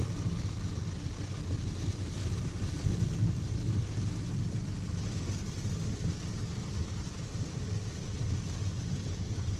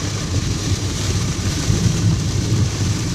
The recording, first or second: first